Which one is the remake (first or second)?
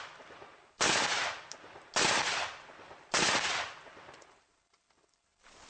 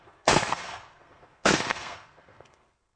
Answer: second